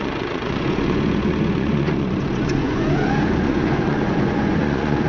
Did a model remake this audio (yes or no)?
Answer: yes